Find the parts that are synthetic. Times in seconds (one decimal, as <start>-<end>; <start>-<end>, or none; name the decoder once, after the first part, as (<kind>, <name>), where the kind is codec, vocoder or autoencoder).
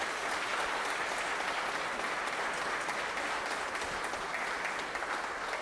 none